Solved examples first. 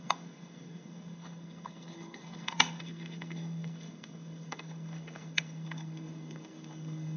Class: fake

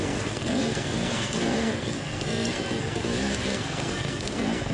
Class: fake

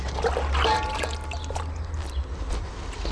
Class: real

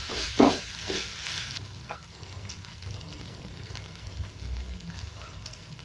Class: fake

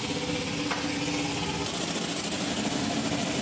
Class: real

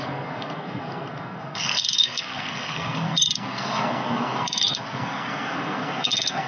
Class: fake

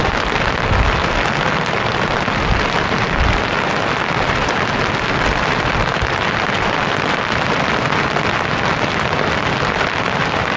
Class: real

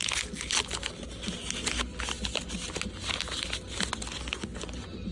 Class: real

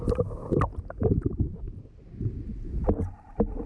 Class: real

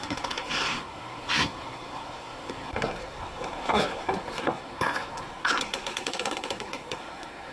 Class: fake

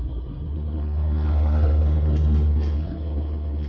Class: fake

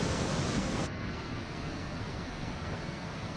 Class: fake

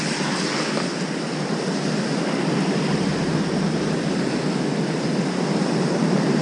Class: real